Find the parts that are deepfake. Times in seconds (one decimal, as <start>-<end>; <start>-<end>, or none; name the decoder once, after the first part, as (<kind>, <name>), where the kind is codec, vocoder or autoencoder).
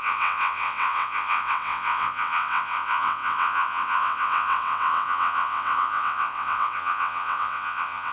0.0-8.1 (vocoder, WaveNeXt)